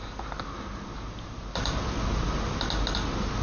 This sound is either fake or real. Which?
real